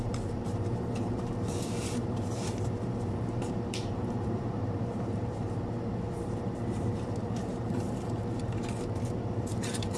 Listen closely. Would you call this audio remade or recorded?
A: remade